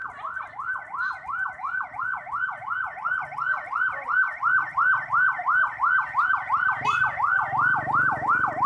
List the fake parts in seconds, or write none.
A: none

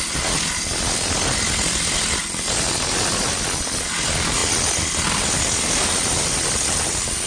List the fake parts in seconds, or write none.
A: none

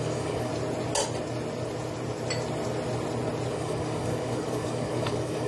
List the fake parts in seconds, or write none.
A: 0.0-0.5 (codec, DAC); 3.5-5.5

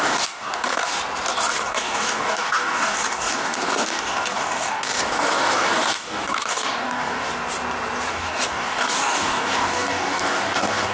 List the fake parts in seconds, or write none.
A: 0.0-0.9 (codec, DAC); 1.5-7.3; 8.1-10.9

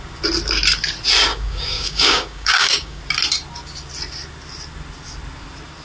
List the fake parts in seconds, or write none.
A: 1.3-3.0 (codec, DAC)